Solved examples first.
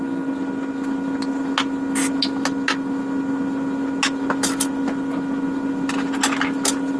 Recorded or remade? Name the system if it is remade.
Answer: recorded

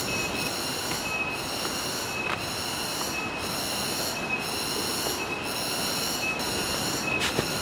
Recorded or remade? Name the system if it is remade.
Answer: recorded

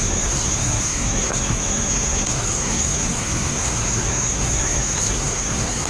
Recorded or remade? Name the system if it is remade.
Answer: remade, codec, SNAC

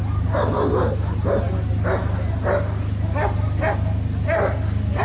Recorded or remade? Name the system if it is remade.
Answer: recorded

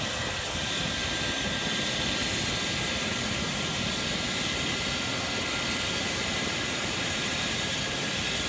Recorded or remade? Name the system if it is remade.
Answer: recorded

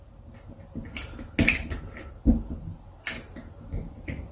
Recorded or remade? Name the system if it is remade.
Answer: recorded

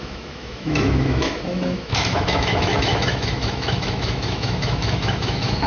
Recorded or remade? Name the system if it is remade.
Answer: remade, autoencoder, DAC-VAE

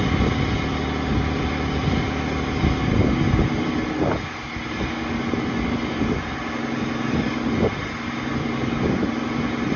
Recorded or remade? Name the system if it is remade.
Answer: recorded